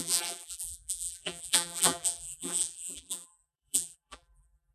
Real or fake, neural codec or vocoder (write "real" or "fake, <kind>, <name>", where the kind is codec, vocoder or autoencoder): fake, vocoder, BigVGAN v2